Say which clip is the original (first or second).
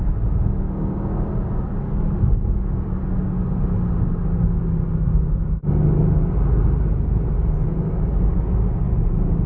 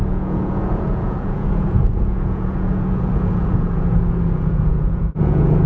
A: first